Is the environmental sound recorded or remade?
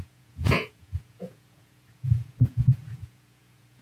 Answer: remade